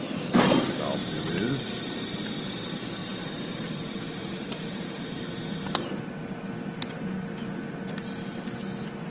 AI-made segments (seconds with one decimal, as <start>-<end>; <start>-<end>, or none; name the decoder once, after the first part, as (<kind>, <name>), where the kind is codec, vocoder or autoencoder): 1.0-2.4 (vocoder, BigVGAN v2); 3.0-5.3